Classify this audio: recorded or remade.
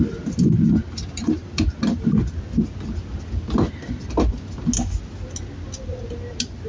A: recorded